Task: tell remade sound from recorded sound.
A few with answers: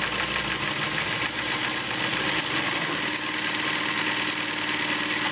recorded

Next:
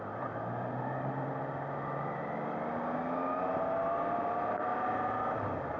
recorded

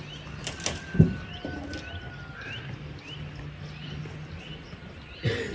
recorded